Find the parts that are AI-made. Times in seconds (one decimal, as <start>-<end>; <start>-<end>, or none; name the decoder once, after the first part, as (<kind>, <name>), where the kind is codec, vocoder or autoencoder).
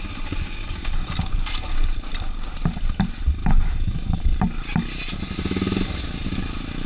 3.4-4.2 (autoencoder, DAC-VAE)